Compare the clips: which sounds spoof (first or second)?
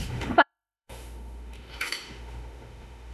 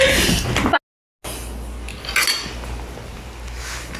first